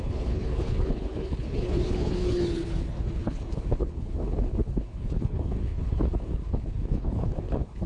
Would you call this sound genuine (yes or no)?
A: no